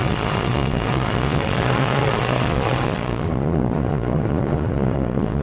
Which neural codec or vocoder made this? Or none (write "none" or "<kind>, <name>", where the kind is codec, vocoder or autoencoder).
vocoder, Vocos